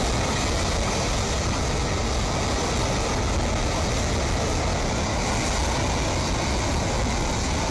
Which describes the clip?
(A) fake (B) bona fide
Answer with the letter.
B